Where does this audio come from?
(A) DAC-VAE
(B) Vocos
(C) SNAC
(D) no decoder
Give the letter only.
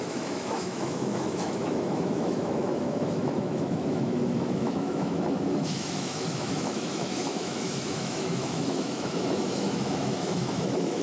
A